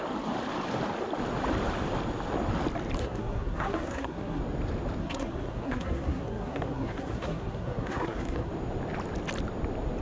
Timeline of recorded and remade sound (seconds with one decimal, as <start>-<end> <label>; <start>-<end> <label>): 0.0-3.0 recorded; 3.0-4.4 remade; 4.4-5.0 recorded; 5.0-8.5 remade; 8.5-10.0 recorded